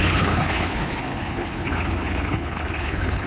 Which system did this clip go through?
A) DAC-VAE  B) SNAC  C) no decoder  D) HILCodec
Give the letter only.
D